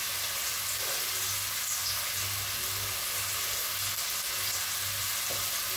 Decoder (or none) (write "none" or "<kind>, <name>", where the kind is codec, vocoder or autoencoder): none